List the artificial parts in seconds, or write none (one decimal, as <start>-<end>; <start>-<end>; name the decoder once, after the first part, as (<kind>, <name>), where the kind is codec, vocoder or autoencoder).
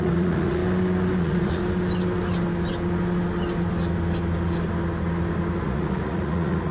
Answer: 0.0-0.6 (vocoder, Vocos); 1.2-1.6; 5.6-6.7